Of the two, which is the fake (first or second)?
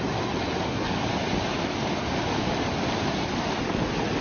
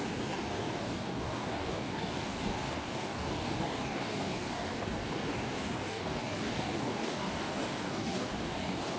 second